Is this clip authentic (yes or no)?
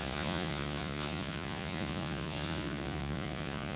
no